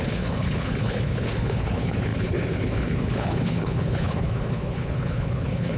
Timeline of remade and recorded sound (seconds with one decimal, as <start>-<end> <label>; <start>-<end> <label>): 0.0-5.8 remade